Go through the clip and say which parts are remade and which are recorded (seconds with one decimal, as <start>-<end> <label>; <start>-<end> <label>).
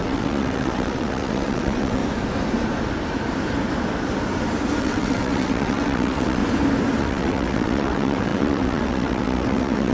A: 0.0-2.0 remade; 2.0-4.8 recorded; 4.8-6.4 remade; 6.4-7.0 recorded; 7.0-9.9 remade